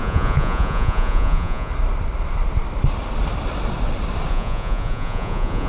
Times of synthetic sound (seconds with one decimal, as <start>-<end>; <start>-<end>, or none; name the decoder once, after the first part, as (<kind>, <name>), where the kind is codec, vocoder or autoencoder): 0.0-1.7 (vocoder, Vocos); 4.3-5.7